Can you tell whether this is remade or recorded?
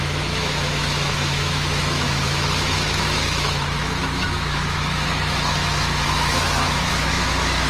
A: remade